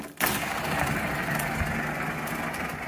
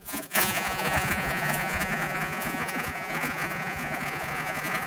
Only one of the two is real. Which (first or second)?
first